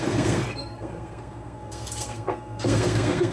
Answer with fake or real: fake